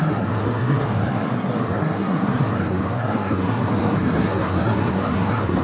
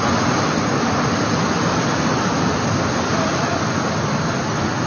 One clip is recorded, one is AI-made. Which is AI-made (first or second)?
first